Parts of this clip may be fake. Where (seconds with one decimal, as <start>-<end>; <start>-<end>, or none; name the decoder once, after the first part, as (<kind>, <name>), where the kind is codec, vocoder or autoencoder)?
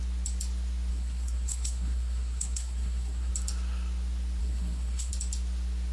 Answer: 0.9-3.3 (codec, SNAC); 4.4-5.1